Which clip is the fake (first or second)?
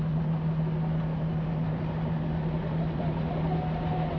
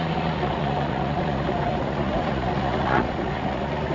second